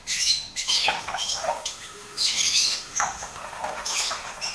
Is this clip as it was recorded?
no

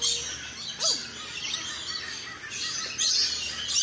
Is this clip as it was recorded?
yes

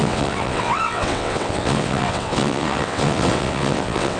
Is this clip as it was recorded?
no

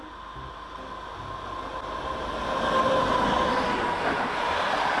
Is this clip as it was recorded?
yes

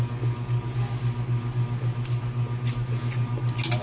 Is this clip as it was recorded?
yes